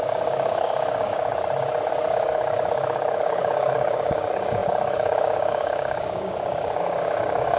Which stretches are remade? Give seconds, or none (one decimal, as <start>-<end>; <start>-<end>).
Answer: 0.0-1.3; 1.9-7.6